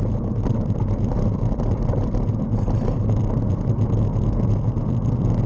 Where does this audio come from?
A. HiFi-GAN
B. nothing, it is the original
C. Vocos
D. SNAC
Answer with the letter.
B